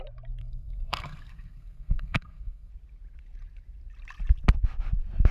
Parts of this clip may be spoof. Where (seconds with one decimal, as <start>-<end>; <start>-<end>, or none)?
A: 0.4-2.7